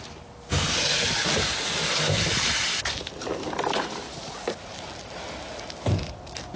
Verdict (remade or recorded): recorded